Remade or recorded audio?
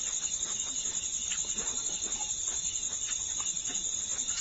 recorded